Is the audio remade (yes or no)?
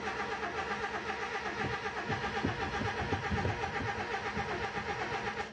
no